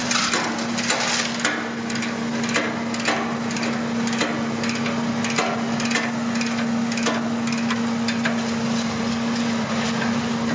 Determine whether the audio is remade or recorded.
recorded